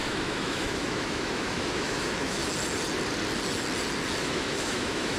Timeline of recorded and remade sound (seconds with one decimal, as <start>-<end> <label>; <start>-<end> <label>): 0.0-2.4 remade; 2.4-4.2 recorded; 4.2-5.2 remade